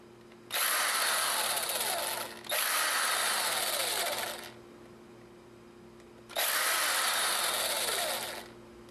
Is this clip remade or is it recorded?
recorded